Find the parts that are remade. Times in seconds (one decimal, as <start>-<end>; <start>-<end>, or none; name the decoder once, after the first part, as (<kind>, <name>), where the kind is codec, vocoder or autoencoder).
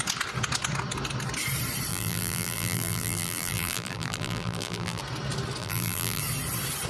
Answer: 1.9-5.0 (vocoder, BigVGAN v2); 5.6-6.2